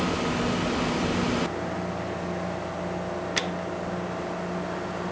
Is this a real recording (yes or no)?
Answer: yes